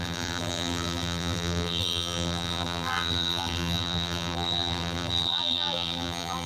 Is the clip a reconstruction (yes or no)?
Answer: yes